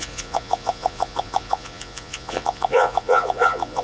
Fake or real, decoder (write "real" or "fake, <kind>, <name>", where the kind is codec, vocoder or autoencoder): fake, vocoder, Vocos